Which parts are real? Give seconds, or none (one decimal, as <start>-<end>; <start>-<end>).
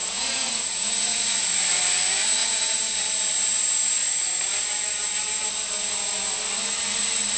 1.2-2.4; 2.9-7.4